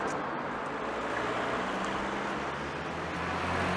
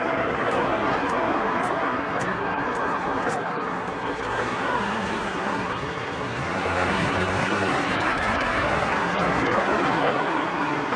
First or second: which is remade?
second